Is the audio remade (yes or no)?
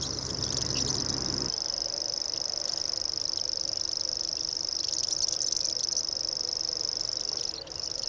no